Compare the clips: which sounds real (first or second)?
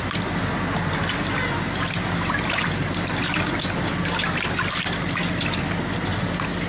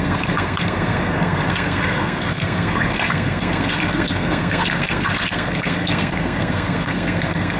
first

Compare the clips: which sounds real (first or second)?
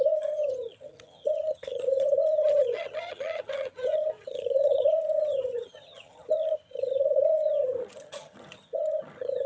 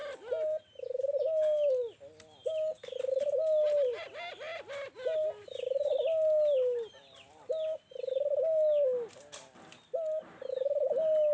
second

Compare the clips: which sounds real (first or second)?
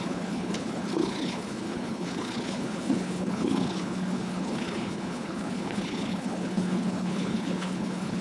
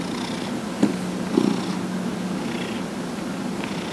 second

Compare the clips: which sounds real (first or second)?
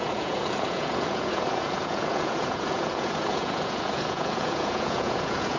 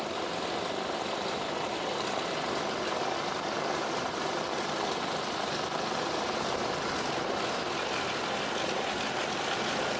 second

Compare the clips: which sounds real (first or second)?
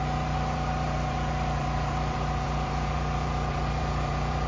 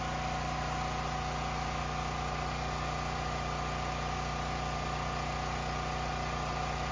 second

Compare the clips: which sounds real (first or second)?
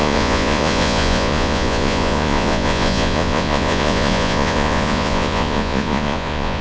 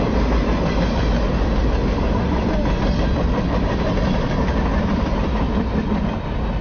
second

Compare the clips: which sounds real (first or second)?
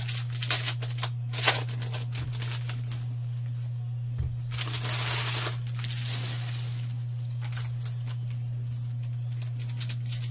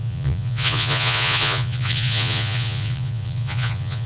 first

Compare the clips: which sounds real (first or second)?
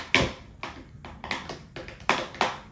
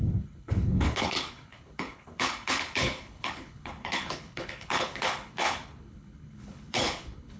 first